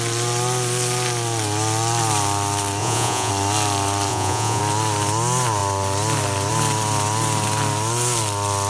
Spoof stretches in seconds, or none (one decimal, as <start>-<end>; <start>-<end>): 2.8-3.3; 4.1-4.6